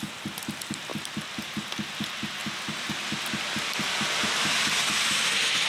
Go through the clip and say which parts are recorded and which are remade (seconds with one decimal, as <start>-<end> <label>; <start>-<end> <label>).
0.0-5.7 recorded